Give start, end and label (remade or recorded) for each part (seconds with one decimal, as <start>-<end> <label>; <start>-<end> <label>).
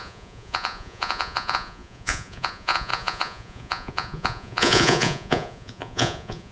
0.0-6.5 remade